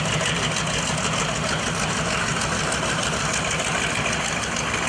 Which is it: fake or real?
real